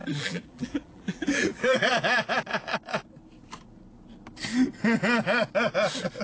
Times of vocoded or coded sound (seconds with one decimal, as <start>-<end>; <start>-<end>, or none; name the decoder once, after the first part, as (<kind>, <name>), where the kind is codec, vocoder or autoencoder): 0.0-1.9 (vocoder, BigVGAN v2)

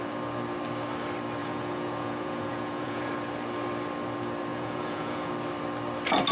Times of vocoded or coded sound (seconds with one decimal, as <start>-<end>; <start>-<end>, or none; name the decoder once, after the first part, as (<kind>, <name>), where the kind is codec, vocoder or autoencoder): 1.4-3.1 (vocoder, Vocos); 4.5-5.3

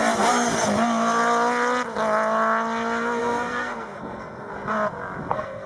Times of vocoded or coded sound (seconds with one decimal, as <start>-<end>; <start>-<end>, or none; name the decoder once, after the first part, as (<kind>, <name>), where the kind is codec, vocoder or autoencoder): 3.2-4.5 (codec, SNAC); 5.3-5.7

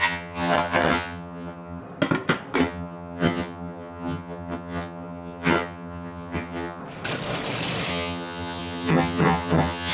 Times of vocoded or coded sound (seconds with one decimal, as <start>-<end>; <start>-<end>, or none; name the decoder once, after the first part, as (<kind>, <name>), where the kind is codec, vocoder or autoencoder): 0.0-1.8 (vocoder, HiFi-GAN); 2.6-6.8; 7.9-9.9